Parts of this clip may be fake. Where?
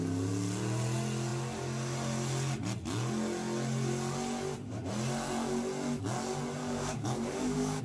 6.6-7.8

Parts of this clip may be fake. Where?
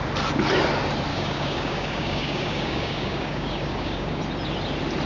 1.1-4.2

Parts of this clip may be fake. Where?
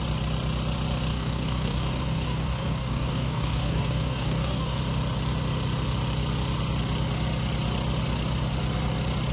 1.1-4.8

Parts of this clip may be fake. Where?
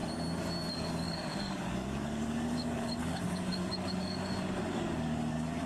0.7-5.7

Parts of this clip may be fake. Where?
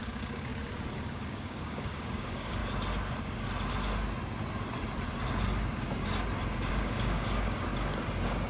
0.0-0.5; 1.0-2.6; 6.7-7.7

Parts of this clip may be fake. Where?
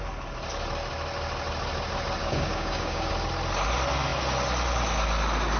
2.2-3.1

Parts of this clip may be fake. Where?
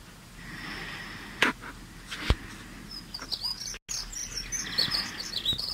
none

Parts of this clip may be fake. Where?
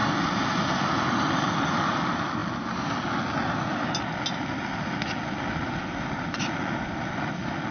none